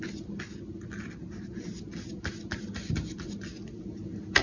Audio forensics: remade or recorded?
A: recorded